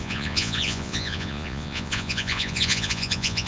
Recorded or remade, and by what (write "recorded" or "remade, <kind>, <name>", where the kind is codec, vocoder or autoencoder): remade, vocoder, Vocos